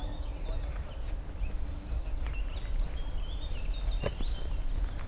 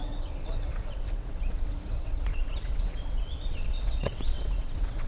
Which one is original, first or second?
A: first